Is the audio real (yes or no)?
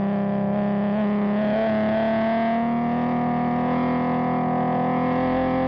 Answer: yes